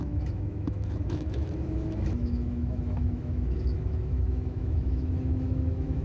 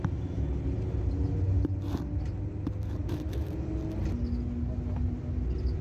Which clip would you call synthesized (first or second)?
first